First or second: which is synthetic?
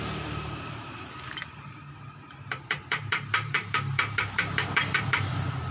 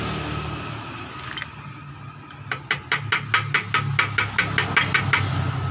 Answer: first